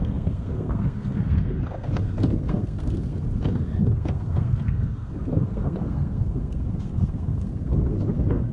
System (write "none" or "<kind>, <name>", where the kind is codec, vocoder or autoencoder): codec, SNAC